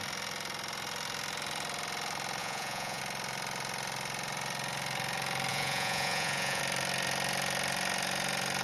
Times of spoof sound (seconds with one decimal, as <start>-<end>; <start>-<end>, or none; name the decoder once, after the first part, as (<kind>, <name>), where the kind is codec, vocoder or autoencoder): 2.4-3.0 (vocoder, Vocos); 5.5-6.6